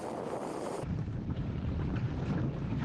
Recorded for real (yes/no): no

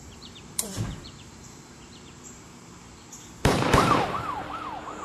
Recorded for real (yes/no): no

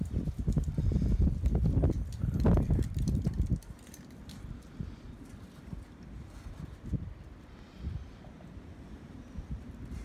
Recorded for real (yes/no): no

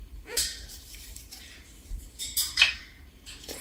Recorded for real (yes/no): no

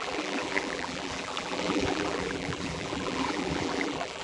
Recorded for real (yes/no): no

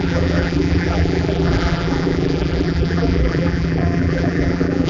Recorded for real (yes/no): no